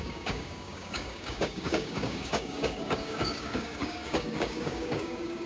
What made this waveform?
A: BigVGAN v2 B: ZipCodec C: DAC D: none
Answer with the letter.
C